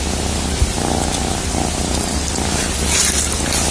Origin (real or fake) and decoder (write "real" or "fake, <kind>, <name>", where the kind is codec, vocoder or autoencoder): real